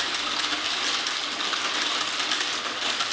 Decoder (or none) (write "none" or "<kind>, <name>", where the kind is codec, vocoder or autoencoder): none